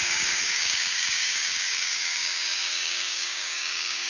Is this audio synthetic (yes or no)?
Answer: yes